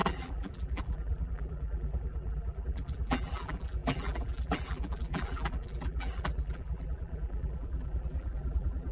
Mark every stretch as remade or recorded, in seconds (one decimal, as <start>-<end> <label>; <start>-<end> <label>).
0.0-8.9 remade